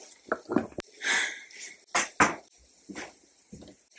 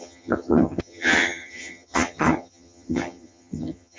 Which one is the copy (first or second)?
second